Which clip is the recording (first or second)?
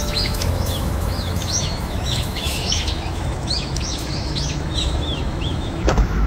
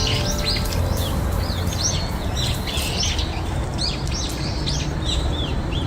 second